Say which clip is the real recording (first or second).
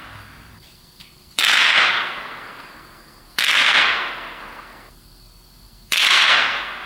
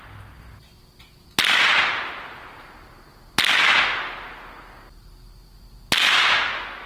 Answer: second